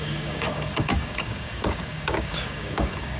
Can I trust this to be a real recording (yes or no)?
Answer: no